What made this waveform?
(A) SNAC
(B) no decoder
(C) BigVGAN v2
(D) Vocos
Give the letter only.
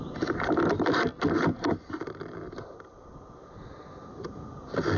C